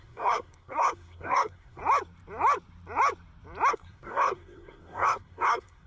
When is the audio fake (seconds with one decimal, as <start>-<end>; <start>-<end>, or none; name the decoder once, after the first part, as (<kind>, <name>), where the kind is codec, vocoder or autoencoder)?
0.0-1.8 (codec, SNAC); 3.7-5.9